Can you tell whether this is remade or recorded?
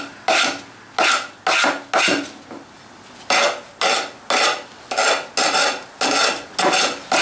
recorded